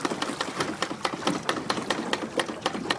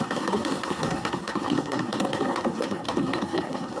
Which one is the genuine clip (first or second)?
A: first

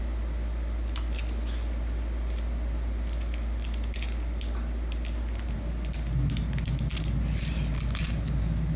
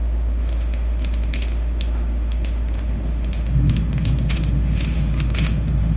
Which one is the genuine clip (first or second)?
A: first